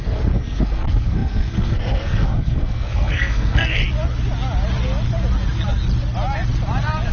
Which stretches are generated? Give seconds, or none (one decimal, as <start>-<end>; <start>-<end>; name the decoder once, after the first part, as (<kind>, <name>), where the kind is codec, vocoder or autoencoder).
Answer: 0.0-3.8 (codec, SNAC)